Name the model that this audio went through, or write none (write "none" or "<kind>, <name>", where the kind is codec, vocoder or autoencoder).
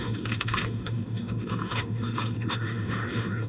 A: autoencoder, DAC-VAE